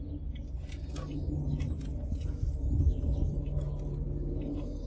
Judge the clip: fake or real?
real